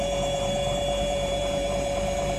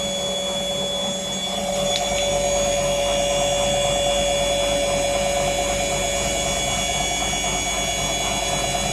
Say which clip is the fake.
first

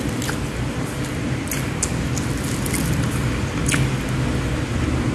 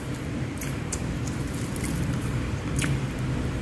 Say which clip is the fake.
second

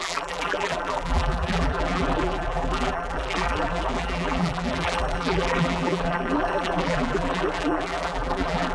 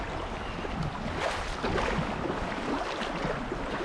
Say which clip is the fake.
first